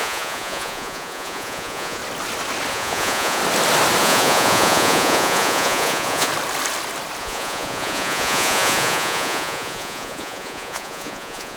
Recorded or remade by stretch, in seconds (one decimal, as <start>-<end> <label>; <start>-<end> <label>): 0.0-2.0 remade; 2.0-2.7 recorded; 2.7-3.4 remade; 3.4-4.0 recorded; 4.0-6.3 remade; 6.3-7.2 recorded; 7.2-11.6 remade